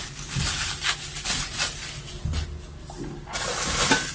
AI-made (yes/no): no